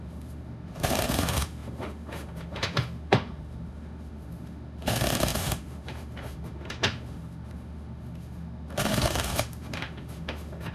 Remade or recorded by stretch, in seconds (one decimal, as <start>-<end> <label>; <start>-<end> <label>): 0.0-10.7 remade